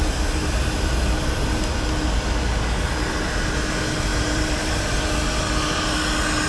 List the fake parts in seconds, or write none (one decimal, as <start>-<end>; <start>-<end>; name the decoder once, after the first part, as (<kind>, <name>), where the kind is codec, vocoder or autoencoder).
4.1-5.0 (vocoder, BigVGAN v2)

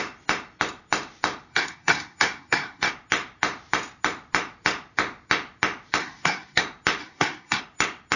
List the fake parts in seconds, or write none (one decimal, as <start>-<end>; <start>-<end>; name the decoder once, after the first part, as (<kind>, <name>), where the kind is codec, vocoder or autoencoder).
1.5-2.9 (codec, SNAC); 6.0-6.6; 7.0-7.6

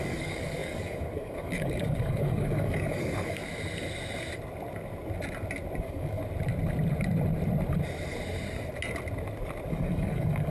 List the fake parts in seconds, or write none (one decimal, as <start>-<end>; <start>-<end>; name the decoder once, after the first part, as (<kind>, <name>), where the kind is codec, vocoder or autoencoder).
0.0-3.4 (codec, DAC); 5.8-6.2; 9.7-10.5

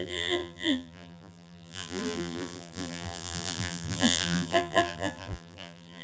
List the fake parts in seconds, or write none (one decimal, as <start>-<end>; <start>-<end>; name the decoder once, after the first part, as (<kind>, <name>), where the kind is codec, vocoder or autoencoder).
0.0-6.0 (vocoder, BigVGAN v2)